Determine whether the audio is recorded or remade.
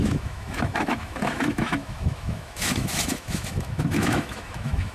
remade